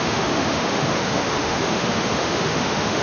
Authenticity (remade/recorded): remade